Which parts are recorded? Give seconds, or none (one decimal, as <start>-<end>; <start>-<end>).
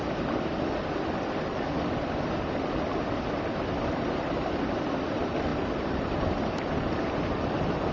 0.0-7.9